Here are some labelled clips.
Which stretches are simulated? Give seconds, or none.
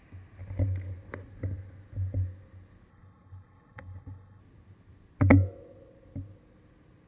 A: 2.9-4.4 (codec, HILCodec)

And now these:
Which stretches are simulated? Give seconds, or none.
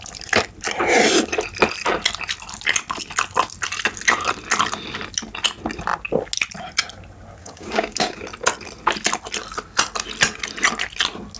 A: 7.4-8.2 (codec, DAC)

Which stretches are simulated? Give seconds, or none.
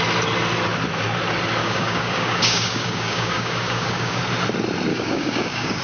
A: 1.6-4.2 (codec, DAC); 4.9-5.8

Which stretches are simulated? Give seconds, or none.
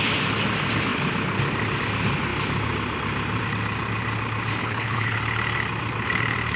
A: 4.6-5.2 (codec, HILCodec)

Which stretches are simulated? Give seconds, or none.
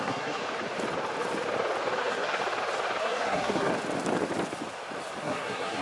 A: 0.0-0.4 (codec, SNAC); 2.0-2.4; 3.0-3.7; 5.2-5.8